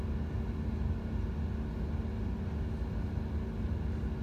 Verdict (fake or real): real